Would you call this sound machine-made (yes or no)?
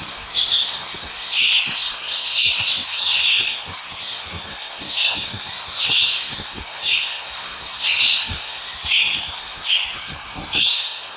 yes